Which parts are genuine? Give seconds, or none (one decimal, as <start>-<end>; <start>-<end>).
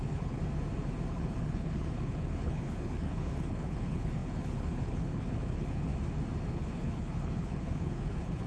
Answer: 0.4-1.1; 5.9-6.5